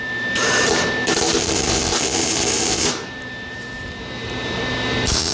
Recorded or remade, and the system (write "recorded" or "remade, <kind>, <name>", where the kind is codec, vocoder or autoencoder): remade, vocoder, BigVGAN v2